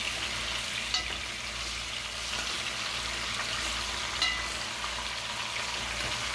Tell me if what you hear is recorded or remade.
recorded